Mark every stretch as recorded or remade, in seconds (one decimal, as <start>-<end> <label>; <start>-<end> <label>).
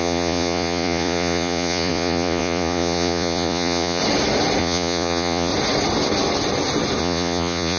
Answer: 0.0-4.0 remade; 4.0-4.6 recorded; 4.6-5.5 remade; 5.5-7.0 recorded; 7.0-7.8 remade